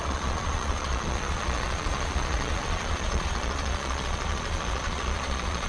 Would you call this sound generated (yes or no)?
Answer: yes